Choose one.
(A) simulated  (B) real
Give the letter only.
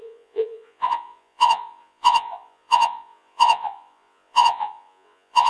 A